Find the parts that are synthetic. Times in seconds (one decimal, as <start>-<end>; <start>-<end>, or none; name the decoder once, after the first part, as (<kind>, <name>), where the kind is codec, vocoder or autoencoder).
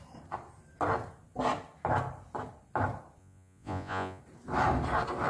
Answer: 3.2-4.2 (vocoder, Vocos)